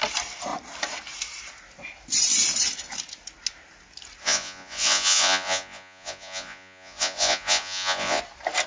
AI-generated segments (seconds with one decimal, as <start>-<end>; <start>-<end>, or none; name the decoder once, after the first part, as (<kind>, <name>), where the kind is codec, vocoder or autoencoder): 4.2-8.2 (vocoder, Vocos)